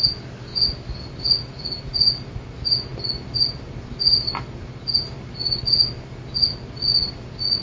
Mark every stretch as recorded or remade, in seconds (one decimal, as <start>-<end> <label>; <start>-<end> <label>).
0.0-7.6 recorded

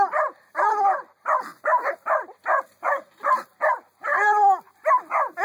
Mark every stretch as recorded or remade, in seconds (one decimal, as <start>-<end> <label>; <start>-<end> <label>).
0.0-5.4 recorded

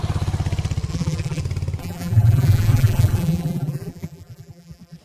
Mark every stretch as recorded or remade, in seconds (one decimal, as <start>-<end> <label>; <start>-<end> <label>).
0.0-0.9 recorded; 0.9-1.4 remade; 1.4-1.8 recorded; 1.8-5.0 remade

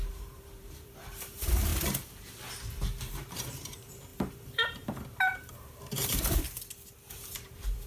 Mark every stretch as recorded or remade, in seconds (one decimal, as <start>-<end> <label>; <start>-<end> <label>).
0.0-1.7 remade; 1.7-3.0 recorded; 3.0-6.4 remade; 6.4-7.1 recorded; 7.1-7.9 remade

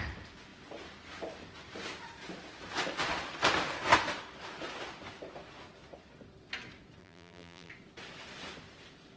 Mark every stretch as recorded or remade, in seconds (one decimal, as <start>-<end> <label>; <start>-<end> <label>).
0.0-7.0 recorded; 7.0-7.7 remade; 7.7-9.2 recorded

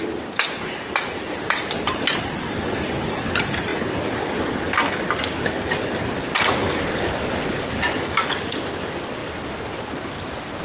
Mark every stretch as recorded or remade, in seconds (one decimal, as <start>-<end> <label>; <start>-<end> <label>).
0.0-10.6 recorded

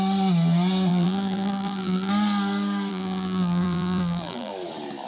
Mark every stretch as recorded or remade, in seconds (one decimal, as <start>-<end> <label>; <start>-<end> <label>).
0.0-0.9 recorded; 0.9-2.1 remade; 2.1-2.9 recorded; 2.9-4.5 remade; 4.5-5.1 recorded

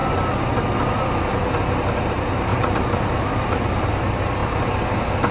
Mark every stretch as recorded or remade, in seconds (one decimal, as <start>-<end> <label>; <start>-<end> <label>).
0.0-2.5 recorded; 2.5-3.9 remade; 3.9-5.3 recorded